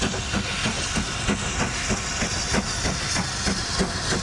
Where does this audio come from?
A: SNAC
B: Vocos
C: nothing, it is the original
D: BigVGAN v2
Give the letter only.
C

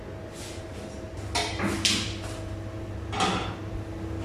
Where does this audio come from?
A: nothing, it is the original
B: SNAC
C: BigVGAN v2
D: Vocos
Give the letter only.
A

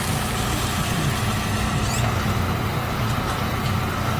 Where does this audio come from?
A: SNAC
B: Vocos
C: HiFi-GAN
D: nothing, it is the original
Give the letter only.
D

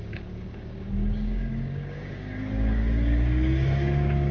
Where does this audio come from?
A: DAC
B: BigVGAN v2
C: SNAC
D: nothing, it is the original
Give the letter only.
A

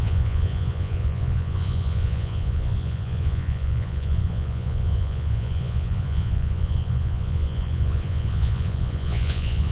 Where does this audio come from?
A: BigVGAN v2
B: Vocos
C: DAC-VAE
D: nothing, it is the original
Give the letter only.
B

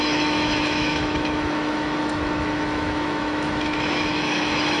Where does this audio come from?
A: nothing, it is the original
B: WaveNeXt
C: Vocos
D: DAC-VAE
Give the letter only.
D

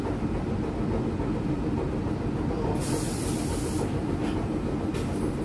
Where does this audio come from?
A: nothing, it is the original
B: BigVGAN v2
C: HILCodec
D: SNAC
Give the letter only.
A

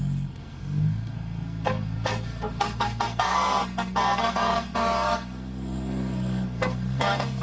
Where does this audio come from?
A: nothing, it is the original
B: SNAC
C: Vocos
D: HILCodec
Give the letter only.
B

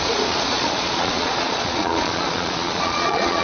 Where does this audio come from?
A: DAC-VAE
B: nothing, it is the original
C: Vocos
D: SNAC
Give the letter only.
C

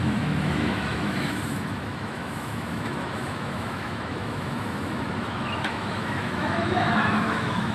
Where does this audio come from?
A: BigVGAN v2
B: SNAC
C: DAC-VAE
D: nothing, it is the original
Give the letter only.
C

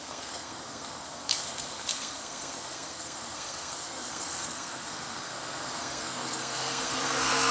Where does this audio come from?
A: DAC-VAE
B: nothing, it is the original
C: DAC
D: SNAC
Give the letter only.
D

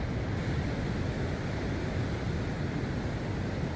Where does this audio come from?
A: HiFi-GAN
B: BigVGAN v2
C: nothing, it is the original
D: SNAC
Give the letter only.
C